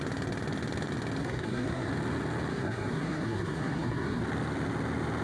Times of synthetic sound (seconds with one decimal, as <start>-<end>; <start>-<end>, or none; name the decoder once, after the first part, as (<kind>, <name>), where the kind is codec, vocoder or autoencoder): 1.2-1.9 (codec, SNAC); 2.5-4.2